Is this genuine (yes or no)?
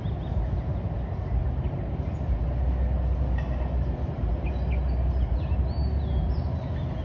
yes